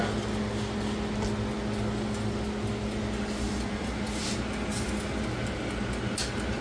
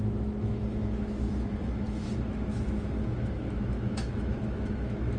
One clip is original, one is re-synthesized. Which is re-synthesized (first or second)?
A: second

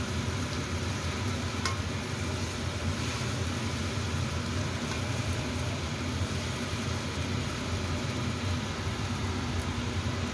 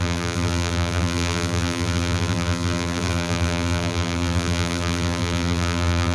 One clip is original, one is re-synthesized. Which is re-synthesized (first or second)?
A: second